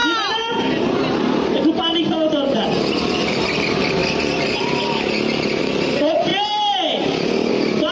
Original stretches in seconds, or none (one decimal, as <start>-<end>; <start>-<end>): 0.0-0.5; 1.9-2.9; 6.3-7.5